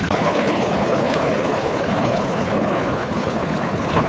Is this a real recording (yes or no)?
no